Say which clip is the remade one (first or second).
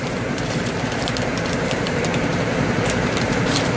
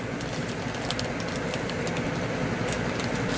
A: first